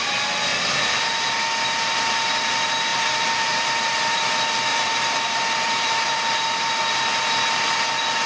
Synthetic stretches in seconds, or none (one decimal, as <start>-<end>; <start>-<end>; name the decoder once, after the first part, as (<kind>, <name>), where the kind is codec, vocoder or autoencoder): 0.5-1.0 (vocoder, BigVGAN v2); 2.9-4.3; 4.7-6.8